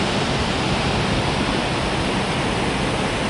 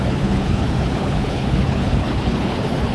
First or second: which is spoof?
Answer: second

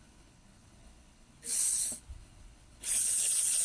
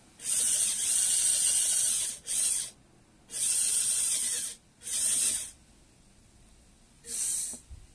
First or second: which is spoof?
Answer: first